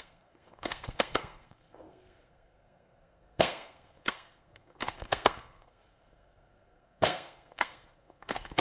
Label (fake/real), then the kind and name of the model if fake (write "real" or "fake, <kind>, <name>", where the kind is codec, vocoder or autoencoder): fake, codec, SNAC